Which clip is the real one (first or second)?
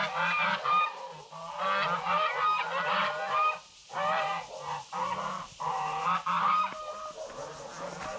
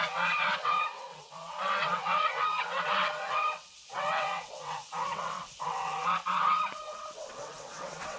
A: first